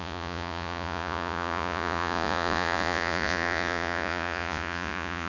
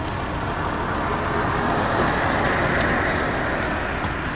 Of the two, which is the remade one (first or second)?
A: first